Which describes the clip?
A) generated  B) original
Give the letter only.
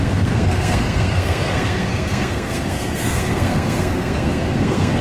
A